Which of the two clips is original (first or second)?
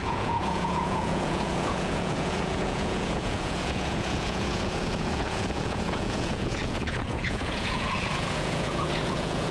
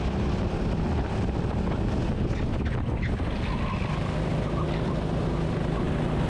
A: second